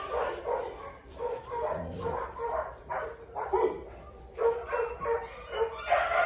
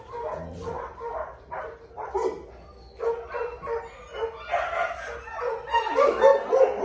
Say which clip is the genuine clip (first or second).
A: second